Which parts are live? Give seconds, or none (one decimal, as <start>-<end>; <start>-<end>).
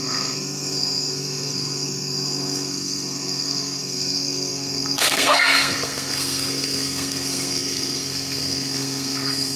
none